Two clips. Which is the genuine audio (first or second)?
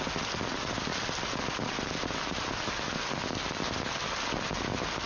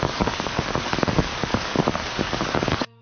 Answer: first